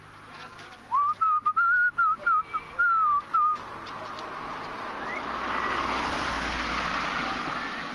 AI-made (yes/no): no